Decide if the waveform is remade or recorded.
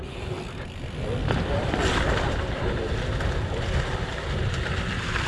recorded